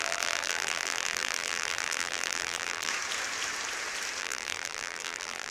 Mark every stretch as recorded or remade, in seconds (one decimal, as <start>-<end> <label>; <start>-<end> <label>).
0.0-2.9 remade; 2.9-4.2 recorded; 4.2-5.5 remade